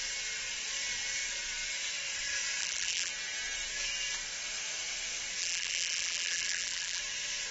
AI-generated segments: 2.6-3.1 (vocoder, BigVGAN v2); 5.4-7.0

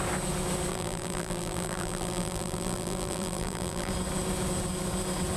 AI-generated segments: 0.7-3.9 (vocoder, BigVGAN v2)